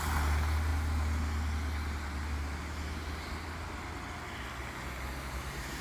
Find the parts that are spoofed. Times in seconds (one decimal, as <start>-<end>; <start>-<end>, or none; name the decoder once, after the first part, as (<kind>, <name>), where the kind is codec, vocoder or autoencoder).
none